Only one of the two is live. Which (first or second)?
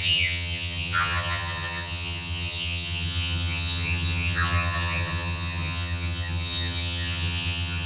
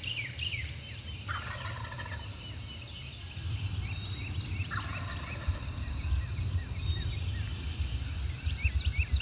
second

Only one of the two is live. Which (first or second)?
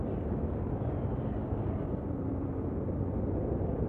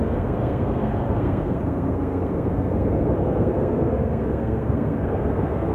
first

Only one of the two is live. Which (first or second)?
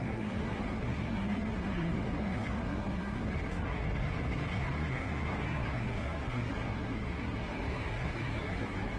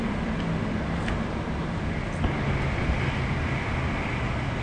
second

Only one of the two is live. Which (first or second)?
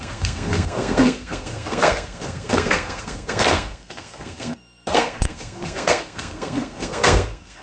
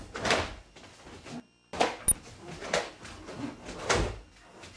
second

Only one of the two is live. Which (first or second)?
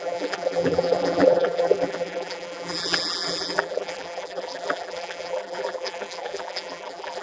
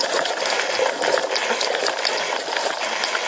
second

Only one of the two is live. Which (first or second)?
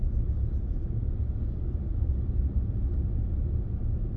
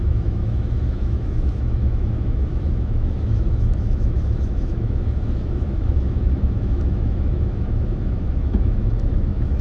first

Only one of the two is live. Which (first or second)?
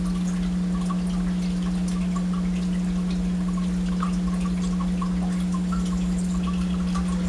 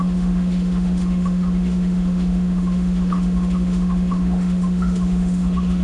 first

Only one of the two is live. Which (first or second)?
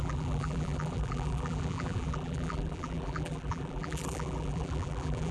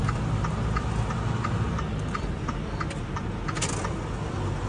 second